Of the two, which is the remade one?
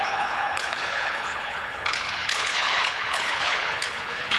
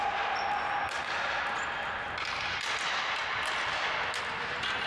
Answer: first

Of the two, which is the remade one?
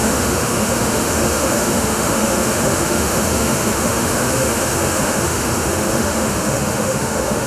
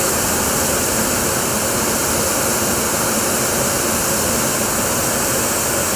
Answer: first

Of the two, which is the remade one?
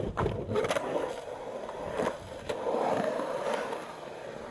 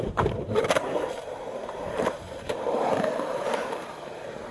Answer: second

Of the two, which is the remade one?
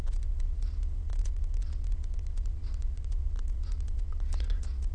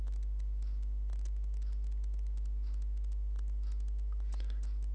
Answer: first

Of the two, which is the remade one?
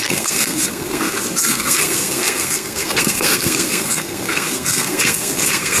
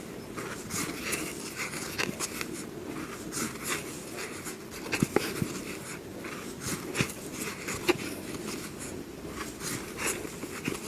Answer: first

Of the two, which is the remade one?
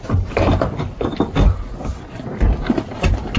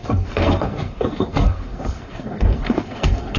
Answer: second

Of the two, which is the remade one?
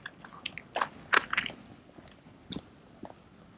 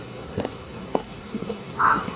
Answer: second